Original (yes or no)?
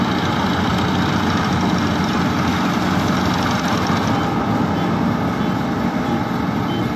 yes